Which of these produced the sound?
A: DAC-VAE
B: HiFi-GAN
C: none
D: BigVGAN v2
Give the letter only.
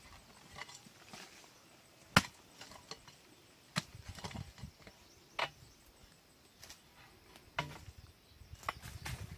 C